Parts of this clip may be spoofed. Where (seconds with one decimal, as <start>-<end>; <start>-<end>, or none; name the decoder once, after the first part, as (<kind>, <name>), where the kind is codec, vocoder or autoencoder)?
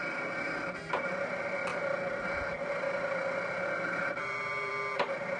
1.7-2.3 (vocoder, BigVGAN v2); 4.0-4.7